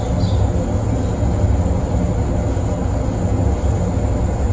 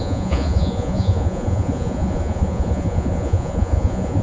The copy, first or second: second